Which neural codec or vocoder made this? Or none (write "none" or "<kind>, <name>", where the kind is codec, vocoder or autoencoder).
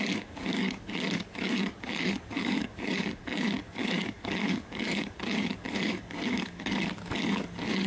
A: codec, DAC